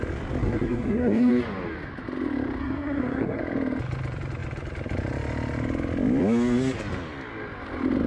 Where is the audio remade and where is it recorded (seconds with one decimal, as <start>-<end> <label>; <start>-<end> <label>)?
0.0-0.4 recorded; 0.4-1.3 remade; 1.3-2.6 recorded; 2.6-3.4 remade; 3.4-8.1 recorded